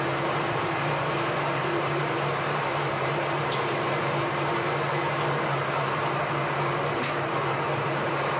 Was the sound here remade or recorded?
remade